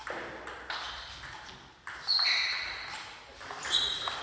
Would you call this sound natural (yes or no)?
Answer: yes